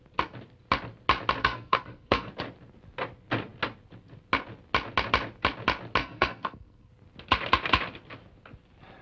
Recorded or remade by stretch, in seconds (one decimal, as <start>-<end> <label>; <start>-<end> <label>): 0.0-1.4 recorded; 1.4-2.3 remade; 2.3-6.0 recorded; 6.0-6.9 remade; 6.9-9.0 recorded